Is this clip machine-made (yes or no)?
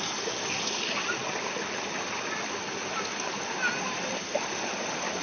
no